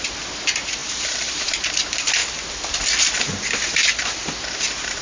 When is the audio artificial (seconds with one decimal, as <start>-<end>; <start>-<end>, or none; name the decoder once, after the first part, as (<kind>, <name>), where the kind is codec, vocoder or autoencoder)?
0.8-1.6 (vocoder, BigVGAN v2); 3.8-4.3